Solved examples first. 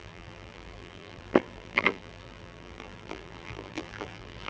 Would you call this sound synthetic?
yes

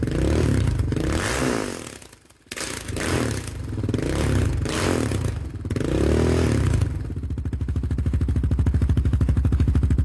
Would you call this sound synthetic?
no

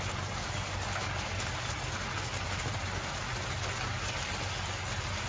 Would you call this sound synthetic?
no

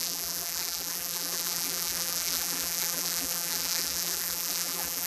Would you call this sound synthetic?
yes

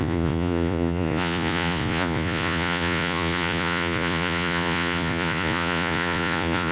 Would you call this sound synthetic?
yes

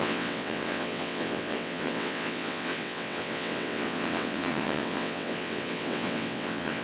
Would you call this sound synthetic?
yes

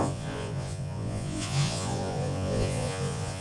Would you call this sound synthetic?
yes